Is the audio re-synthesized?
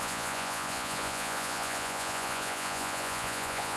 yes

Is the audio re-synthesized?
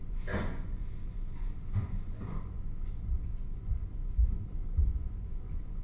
yes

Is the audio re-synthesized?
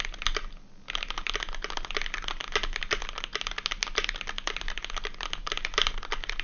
no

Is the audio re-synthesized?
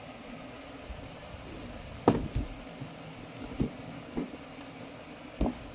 no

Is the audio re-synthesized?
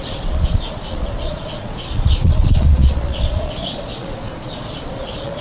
yes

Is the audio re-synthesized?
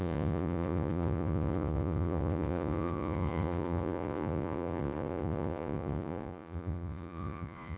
yes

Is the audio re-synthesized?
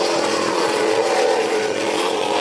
yes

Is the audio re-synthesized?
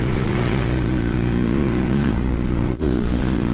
yes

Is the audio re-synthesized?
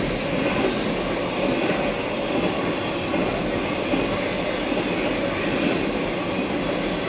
no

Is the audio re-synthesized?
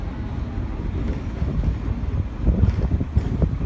no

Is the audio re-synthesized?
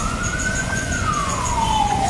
yes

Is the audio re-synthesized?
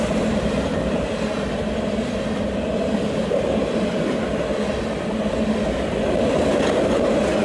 no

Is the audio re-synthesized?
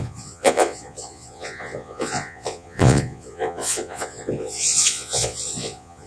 yes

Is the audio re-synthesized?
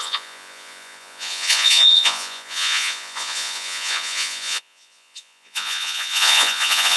yes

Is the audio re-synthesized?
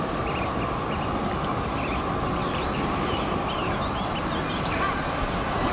no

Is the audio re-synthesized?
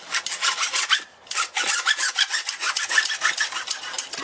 no